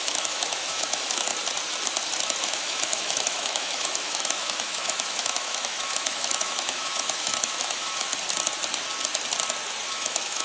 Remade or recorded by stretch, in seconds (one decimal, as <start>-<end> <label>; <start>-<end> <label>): 0.0-1.3 remade; 1.3-2.4 recorded; 2.4-8.1 remade; 8.1-9.9 recorded; 9.9-10.4 remade

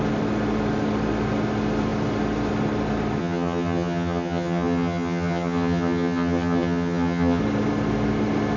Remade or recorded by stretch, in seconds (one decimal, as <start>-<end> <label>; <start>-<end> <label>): 0.0-3.2 recorded; 3.2-7.4 remade; 7.4-8.6 recorded

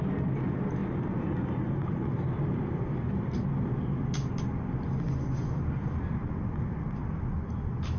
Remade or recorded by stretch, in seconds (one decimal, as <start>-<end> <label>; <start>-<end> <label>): 0.0-8.0 recorded